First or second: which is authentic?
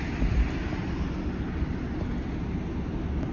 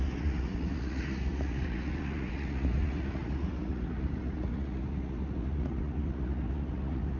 first